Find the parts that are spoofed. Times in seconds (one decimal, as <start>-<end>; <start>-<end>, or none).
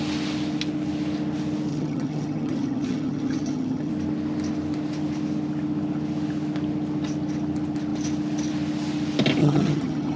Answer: 1.7-3.9; 9.4-10.2